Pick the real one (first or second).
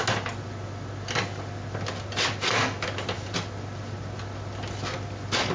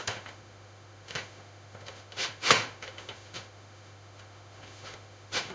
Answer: first